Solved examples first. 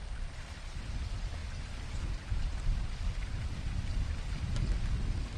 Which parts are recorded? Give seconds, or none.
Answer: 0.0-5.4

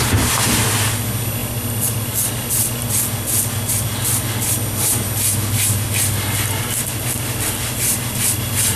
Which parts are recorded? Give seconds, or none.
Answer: 0.0-8.8